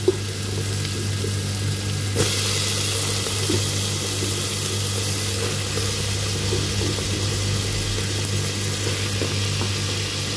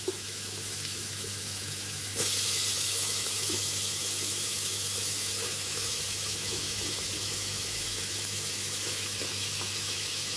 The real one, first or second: first